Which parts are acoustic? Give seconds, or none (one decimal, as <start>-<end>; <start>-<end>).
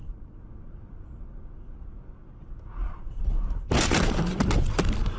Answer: 0.0-2.8; 3.3-5.2